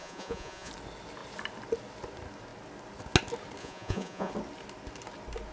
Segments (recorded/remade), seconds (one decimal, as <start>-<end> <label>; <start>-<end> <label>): 0.0-0.7 remade; 0.7-3.6 recorded; 3.6-4.3 remade; 4.3-5.5 recorded

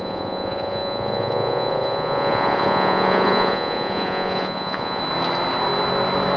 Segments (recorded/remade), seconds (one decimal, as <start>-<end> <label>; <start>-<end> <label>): 0.0-5.0 remade; 5.0-6.4 recorded